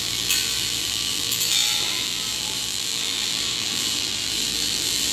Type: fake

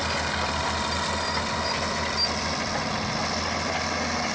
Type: real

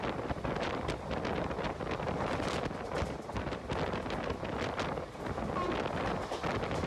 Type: real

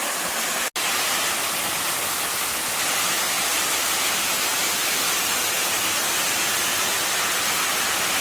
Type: real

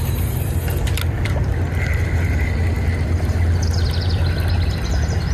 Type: real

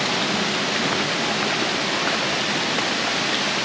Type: real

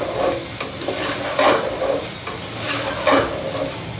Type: real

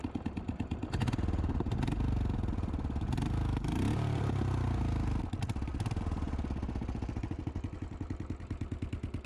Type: real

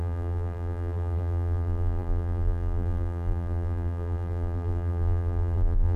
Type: fake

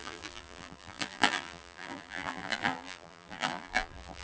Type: fake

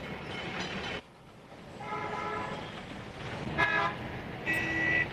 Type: real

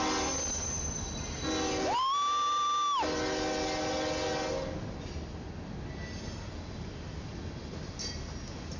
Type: real